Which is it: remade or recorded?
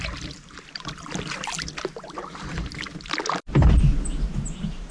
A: recorded